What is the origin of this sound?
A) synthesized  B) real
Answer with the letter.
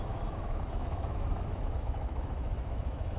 A